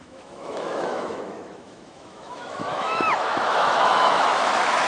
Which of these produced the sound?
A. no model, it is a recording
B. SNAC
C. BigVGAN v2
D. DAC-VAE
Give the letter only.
D